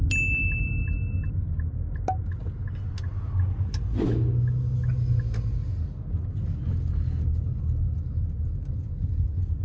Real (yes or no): yes